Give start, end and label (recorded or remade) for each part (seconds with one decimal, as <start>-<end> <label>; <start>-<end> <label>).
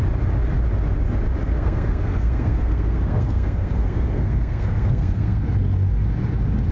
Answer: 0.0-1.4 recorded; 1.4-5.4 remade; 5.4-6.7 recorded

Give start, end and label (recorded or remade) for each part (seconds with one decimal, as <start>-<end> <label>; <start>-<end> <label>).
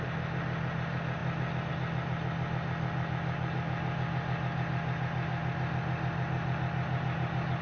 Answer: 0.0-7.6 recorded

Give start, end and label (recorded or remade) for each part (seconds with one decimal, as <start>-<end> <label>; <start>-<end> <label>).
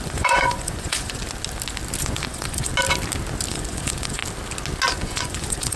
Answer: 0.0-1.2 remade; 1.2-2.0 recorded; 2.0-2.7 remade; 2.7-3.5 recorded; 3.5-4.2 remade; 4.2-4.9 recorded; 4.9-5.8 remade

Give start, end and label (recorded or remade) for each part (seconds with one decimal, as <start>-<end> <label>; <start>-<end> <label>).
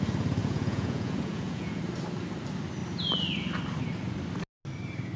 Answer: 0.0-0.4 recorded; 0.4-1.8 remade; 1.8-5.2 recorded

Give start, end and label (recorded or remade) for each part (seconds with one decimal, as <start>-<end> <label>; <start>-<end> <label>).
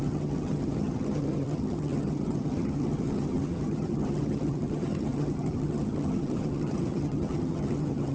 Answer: 0.0-8.1 remade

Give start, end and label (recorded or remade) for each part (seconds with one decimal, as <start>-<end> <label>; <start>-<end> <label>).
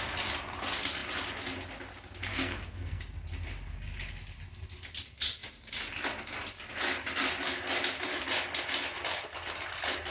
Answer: 0.0-2.3 recorded; 2.3-3.0 remade; 3.0-10.1 recorded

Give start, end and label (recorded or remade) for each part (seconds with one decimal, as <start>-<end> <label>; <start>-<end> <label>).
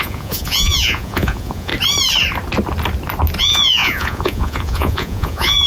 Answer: 0.0-1.7 remade; 1.7-3.4 recorded; 3.4-5.7 remade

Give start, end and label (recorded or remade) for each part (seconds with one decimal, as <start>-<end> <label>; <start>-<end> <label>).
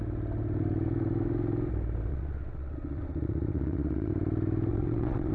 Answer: 0.0-2.1 recorded; 2.1-4.1 remade; 4.1-4.7 recorded; 4.7-5.3 remade